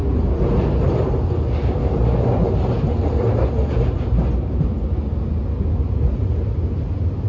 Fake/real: real